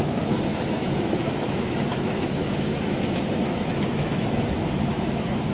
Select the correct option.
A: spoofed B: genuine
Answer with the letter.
A